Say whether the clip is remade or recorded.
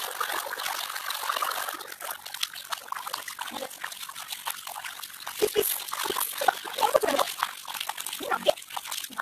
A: recorded